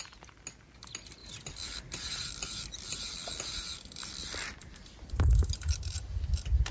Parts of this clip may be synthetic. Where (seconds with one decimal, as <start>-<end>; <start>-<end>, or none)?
1.2-5.2

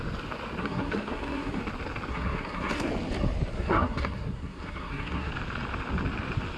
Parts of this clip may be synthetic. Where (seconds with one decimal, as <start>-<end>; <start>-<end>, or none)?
0.6-1.6; 2.1-2.9; 3.5-5.3